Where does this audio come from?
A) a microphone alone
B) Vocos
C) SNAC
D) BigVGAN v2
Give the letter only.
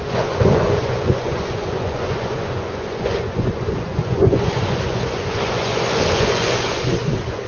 B